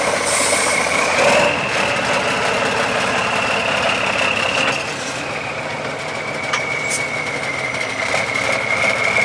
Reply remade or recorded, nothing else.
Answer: recorded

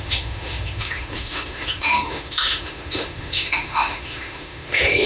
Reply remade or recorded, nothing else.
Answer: remade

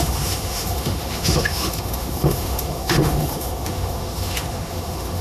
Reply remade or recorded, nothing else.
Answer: remade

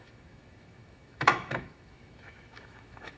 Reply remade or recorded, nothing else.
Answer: remade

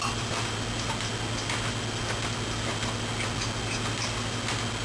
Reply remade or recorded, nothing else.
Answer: recorded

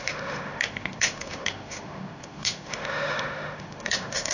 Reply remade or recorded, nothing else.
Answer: remade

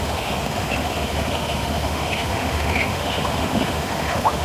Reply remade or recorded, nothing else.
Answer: remade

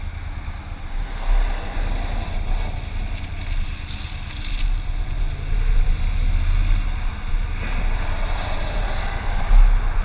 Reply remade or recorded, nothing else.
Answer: recorded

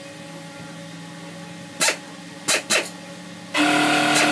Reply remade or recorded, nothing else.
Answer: recorded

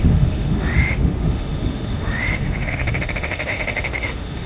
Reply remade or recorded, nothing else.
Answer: remade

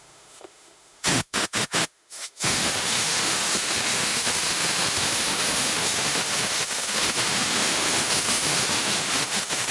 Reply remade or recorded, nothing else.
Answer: remade